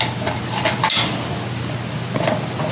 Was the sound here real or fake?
real